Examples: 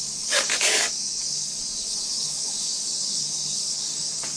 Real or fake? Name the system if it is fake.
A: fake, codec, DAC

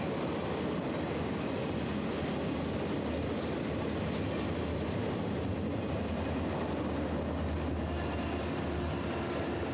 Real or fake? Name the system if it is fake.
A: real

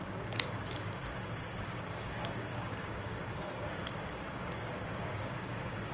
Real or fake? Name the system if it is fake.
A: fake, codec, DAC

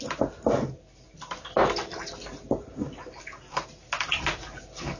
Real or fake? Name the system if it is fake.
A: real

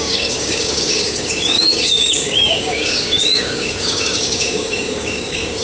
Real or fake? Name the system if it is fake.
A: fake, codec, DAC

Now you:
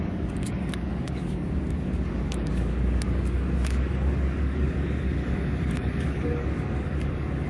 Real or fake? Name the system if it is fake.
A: fake, codec, DAC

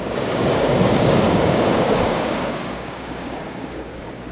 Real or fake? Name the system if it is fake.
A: fake, codec, DAC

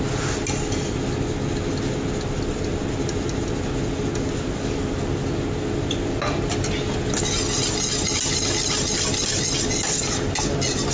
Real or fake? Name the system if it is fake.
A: real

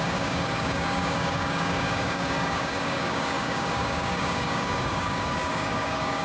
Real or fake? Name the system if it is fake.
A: fake, codec, DAC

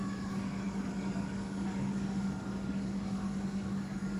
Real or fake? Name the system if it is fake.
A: fake, codec, DAC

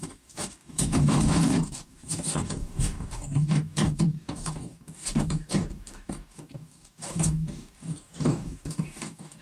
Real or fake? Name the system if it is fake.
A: fake, codec, DAC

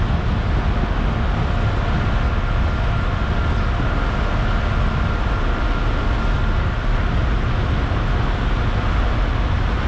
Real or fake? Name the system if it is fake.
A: real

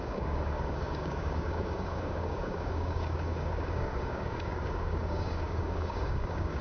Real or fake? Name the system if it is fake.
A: fake, codec, DAC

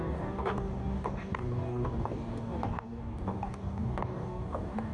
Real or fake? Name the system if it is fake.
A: fake, codec, DAC